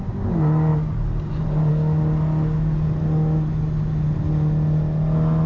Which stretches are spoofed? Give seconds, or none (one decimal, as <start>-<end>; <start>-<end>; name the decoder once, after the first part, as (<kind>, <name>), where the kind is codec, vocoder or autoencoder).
none